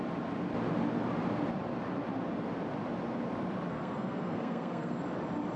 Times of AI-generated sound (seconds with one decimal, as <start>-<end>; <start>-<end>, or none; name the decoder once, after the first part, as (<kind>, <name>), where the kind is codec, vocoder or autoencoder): 3.7-5.0 (codec, SNAC)